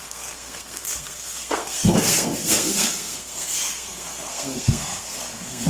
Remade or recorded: remade